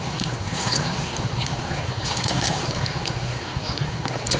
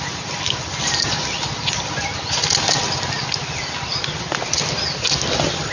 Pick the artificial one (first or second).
first